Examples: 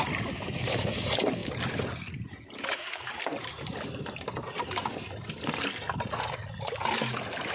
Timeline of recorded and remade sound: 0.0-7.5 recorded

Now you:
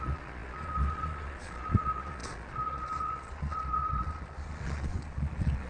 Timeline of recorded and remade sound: 0.0-5.7 remade

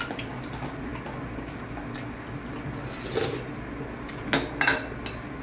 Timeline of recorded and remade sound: 0.0-5.4 recorded

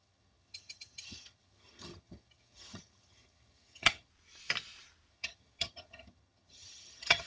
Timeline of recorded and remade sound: 0.0-4.1 remade; 4.1-5.1 recorded; 5.1-7.3 remade

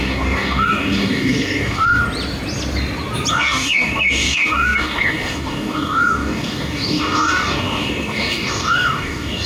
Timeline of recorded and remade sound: 0.0-2.0 remade; 2.0-3.3 recorded; 3.3-9.5 remade

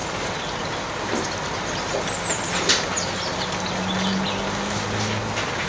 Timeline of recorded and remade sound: 0.0-5.7 recorded

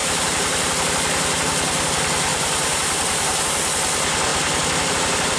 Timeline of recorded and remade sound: 0.0-0.8 remade; 0.8-2.3 recorded; 2.3-3.4 remade; 3.4-5.4 recorded